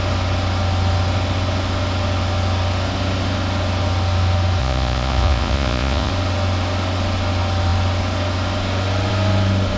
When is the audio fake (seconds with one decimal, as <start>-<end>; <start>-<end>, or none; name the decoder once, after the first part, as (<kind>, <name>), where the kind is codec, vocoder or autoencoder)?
4.6-6.1 (vocoder, Vocos)